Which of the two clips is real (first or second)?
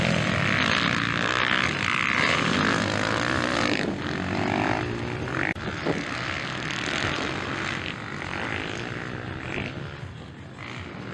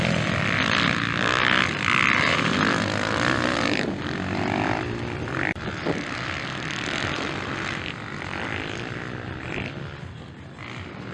first